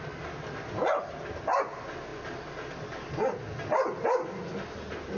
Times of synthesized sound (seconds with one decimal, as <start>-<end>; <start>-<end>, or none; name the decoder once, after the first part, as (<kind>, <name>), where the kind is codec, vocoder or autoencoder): none